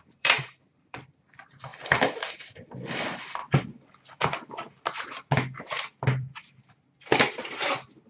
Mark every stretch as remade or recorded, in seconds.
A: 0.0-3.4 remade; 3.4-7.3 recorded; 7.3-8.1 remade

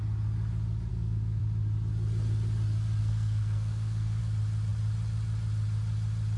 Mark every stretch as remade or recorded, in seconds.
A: 0.0-0.9 recorded; 0.9-1.4 remade; 1.4-3.0 recorded; 3.0-4.2 remade; 4.2-6.4 recorded

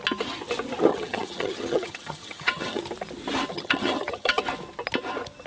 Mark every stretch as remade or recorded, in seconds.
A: 0.0-0.9 recorded; 0.9-2.8 remade; 2.8-3.5 recorded; 3.5-4.4 remade; 4.4-5.5 recorded

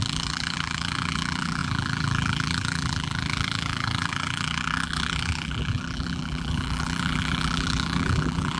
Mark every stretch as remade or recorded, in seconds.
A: 0.0-8.6 remade

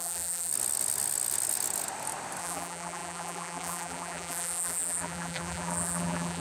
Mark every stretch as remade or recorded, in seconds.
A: 0.0-0.5 remade; 0.5-2.4 recorded; 2.4-6.4 remade

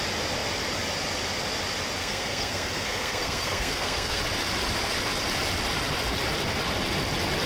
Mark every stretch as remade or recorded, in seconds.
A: 0.0-2.0 recorded; 2.0-4.2 remade; 4.2-7.5 recorded